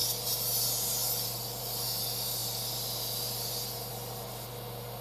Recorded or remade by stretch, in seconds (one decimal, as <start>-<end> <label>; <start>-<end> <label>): 0.0-5.0 recorded